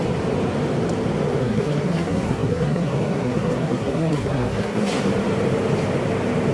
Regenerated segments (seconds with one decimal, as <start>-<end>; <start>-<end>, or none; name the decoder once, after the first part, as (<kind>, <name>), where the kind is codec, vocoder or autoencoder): 1.4-5.0 (codec, SNAC)